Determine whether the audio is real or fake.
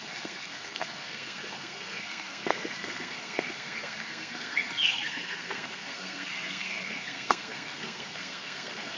fake